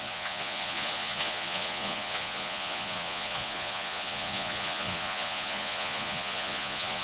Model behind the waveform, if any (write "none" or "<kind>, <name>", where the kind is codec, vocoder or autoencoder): vocoder, Vocos